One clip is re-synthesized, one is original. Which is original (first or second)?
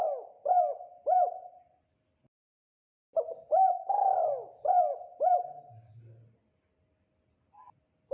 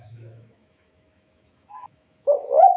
first